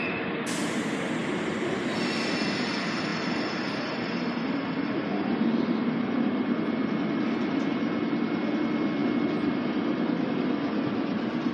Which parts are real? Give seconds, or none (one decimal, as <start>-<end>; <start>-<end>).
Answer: 0.0-3.1; 4.6-11.5